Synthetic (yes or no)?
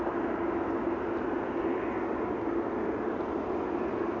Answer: no